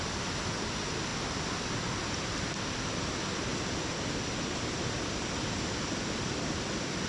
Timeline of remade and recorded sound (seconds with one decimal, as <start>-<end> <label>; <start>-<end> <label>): 0.0-1.1 remade; 1.1-1.9 recorded; 1.9-3.5 remade; 3.5-4.5 recorded; 4.5-7.1 remade

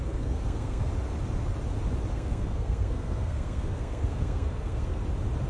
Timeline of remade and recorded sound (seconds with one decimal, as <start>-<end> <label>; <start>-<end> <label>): 0.0-0.9 remade; 0.9-2.1 recorded; 2.1-5.0 remade; 5.0-5.5 recorded

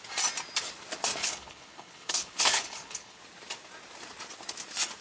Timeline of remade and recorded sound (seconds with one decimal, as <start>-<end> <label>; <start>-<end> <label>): 0.0-1.2 recorded; 1.2-3.2 remade; 3.2-5.0 recorded

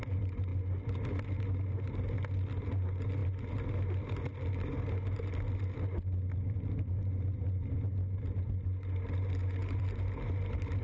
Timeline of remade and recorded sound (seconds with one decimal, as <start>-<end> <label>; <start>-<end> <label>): 0.0-9.6 recorded; 9.6-10.8 remade